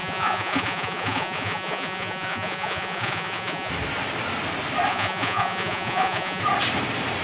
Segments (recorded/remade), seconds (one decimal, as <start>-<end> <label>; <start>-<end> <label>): 0.0-3.7 remade; 3.7-4.9 recorded; 4.9-6.4 remade; 6.4-7.2 recorded